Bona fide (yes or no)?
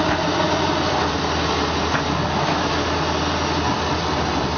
yes